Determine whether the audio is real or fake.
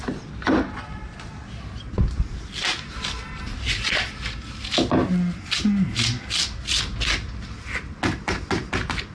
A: real